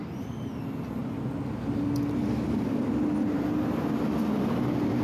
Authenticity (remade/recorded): recorded